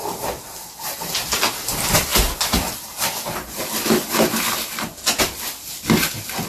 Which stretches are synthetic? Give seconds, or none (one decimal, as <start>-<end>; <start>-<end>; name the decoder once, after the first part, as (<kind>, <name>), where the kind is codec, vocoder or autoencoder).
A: none